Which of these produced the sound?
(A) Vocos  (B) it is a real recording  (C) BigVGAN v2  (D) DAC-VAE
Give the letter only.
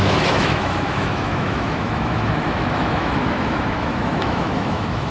D